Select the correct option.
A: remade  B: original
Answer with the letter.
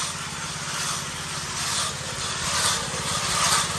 B